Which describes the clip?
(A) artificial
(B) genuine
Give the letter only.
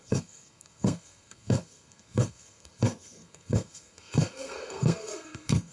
A